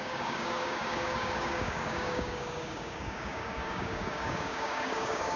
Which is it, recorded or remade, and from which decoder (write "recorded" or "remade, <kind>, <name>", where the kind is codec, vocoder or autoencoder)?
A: remade, codec, DAC